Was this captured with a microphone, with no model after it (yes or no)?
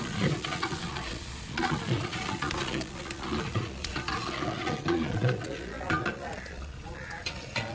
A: no